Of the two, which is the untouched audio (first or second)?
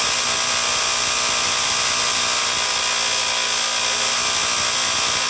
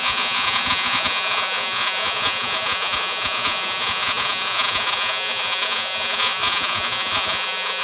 first